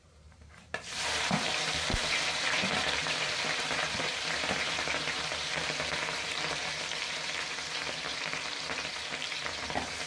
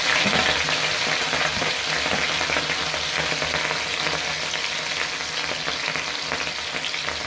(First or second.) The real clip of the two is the second